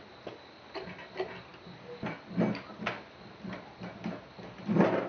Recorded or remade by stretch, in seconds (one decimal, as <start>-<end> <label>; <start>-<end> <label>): 0.0-5.1 recorded